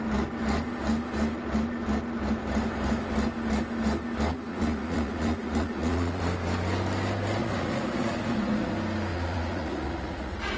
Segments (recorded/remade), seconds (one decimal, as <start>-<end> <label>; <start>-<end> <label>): 0.0-4.5 recorded; 4.5-6.2 remade; 6.2-7.4 recorded; 7.4-8.7 remade; 8.7-9.1 recorded; 9.1-10.6 remade